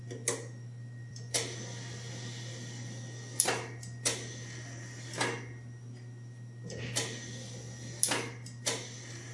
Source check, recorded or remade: recorded